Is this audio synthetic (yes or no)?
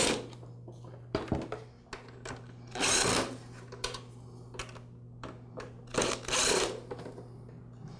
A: no